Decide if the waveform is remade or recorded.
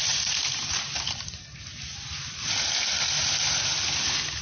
recorded